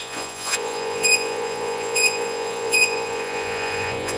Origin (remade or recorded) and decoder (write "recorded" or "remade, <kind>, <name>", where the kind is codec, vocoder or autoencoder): remade, vocoder, Vocos